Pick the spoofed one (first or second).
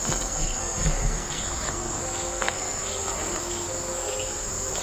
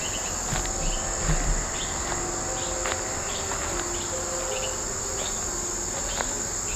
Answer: first